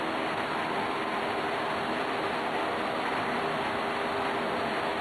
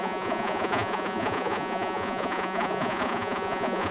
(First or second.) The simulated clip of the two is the second